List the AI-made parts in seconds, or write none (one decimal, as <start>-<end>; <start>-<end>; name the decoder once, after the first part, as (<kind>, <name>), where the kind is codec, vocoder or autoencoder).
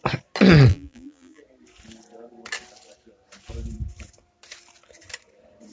0.7-1.4 (vocoder, BigVGAN v2)